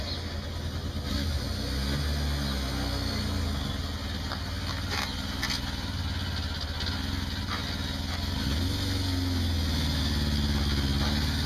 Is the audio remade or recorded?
recorded